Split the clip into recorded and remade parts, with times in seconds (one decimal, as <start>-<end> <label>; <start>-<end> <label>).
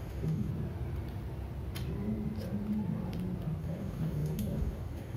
0.0-0.5 remade; 0.5-3.6 recorded; 3.6-5.2 remade